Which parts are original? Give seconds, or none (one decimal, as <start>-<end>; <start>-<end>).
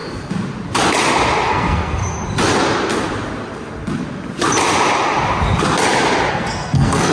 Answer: 0.0-1.5; 2.0-6.3